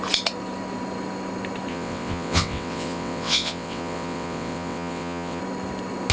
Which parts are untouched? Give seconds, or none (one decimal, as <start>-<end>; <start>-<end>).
0.0-1.7; 5.4-6.1